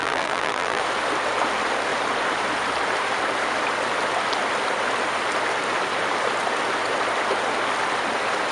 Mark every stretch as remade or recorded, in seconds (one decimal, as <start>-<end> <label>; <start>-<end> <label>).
0.0-0.8 remade; 0.8-8.5 recorded